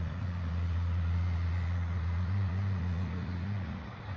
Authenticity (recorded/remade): remade